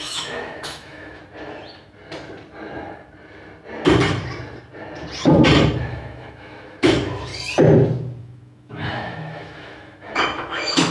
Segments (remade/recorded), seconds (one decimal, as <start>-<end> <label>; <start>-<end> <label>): 0.0-1.2 remade; 1.2-5.9 recorded; 5.9-7.3 remade; 7.3-8.2 recorded; 8.2-10.9 remade